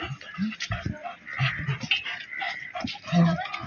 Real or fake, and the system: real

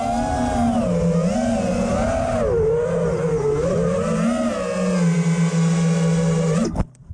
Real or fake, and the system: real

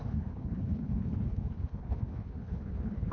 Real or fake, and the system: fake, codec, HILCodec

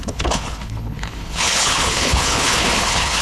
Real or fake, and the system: fake, codec, HILCodec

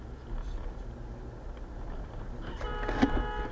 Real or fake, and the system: real